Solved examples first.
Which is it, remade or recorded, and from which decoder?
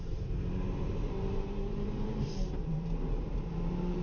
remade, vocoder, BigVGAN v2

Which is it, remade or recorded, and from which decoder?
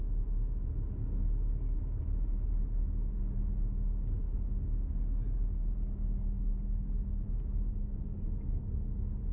recorded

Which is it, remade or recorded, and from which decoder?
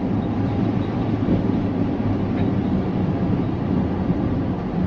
remade, vocoder, BigVGAN v2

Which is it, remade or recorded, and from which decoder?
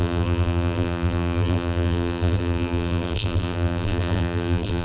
remade, vocoder, BigVGAN v2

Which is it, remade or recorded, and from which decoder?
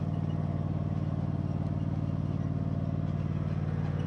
recorded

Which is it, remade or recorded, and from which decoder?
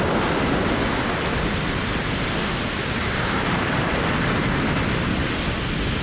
recorded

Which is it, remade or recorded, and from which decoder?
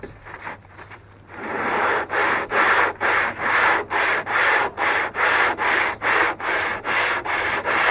remade, vocoder, BigVGAN v2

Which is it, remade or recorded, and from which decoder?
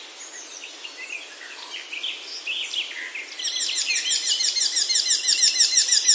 recorded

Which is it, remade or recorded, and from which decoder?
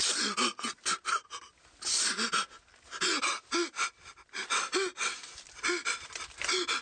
recorded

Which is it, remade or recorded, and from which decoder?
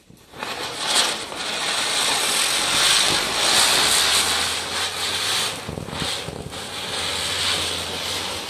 remade, vocoder, BigVGAN v2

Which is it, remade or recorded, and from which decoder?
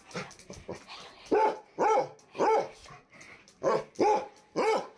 recorded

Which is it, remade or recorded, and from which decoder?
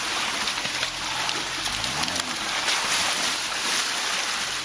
recorded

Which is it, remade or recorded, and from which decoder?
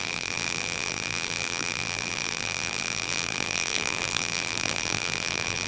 remade, vocoder, BigVGAN v2